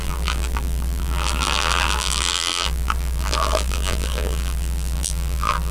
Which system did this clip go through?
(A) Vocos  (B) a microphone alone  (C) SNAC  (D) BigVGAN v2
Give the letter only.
D